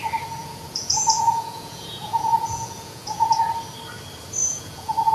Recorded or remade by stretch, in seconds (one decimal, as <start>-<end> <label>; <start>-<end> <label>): 0.0-0.4 recorded; 0.4-3.3 remade; 3.3-4.4 recorded; 4.4-5.1 remade